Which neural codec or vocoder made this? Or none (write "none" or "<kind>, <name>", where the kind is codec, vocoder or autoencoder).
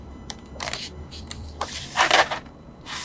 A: vocoder, BigVGAN v2